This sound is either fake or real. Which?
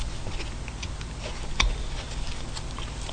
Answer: real